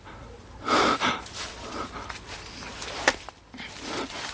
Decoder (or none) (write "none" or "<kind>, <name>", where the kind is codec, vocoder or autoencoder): vocoder, BigVGAN v2